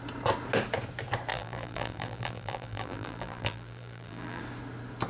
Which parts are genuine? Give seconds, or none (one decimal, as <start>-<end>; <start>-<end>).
0.0-1.3; 4.4-5.1